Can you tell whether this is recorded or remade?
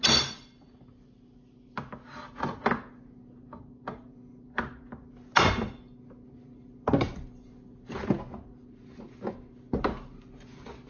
recorded